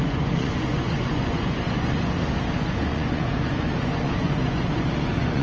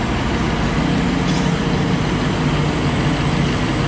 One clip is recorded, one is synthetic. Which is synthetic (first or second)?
first